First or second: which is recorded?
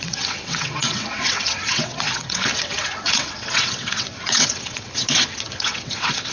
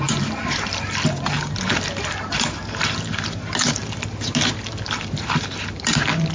second